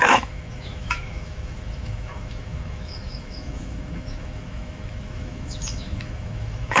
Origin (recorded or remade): remade